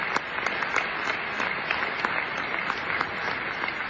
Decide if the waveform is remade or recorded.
recorded